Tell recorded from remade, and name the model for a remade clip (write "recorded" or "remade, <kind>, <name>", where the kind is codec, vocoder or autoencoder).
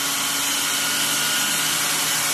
recorded